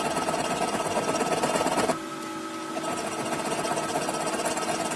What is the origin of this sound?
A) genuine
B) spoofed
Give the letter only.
A